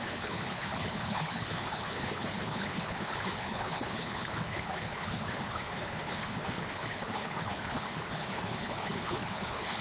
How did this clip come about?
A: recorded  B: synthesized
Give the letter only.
B